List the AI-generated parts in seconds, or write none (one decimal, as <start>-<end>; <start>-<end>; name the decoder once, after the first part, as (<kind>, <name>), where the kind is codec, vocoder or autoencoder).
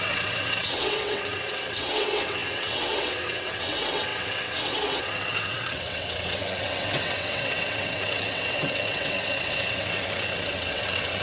0.0-11.2 (vocoder, WaveNeXt)